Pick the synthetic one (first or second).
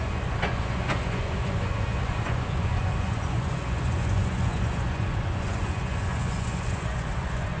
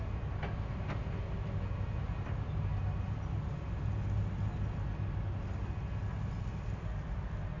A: first